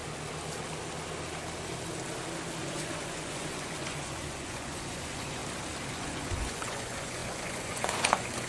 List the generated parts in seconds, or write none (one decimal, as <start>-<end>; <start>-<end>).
2.6-5.4; 5.9-8.5